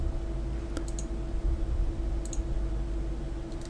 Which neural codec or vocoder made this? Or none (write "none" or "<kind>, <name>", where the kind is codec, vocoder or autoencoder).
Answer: none